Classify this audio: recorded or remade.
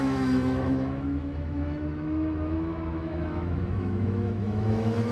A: remade